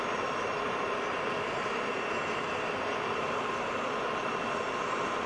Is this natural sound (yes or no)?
no